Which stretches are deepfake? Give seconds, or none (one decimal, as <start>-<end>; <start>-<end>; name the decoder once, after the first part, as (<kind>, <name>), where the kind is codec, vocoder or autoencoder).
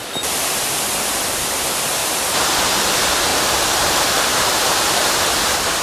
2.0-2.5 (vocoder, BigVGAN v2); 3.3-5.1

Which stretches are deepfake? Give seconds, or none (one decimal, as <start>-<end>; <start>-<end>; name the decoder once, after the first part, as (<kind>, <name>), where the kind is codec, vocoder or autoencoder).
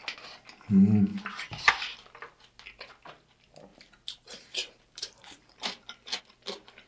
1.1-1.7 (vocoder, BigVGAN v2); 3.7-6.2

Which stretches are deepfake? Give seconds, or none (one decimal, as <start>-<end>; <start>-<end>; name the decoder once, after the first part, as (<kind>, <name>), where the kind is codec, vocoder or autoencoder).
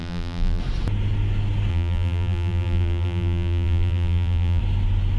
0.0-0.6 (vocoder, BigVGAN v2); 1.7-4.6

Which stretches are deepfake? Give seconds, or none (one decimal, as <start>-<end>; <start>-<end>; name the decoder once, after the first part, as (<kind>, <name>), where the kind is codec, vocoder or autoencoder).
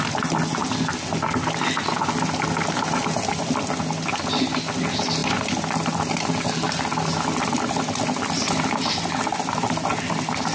5.2-8.7 (vocoder, BigVGAN v2)